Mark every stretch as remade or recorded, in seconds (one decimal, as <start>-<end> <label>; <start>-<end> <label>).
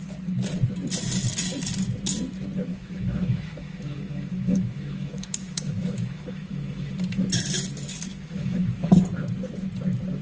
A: 0.0-2.7 recorded; 2.7-6.9 remade; 6.9-8.1 recorded; 8.1-9.0 remade; 9.0-10.2 recorded